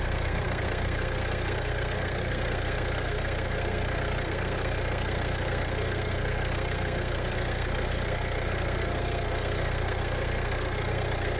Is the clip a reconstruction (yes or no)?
yes